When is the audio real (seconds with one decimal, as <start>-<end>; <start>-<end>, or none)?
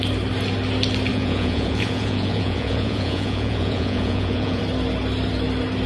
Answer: 0.0-1.1; 4.6-5.9